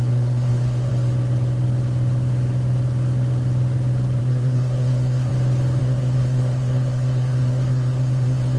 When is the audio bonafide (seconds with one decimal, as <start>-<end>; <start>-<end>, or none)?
0.9-4.2; 5.3-5.8